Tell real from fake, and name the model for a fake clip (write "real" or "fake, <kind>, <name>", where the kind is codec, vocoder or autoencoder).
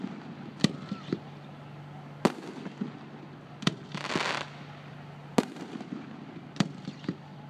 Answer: real